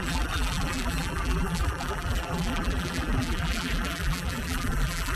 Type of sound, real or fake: fake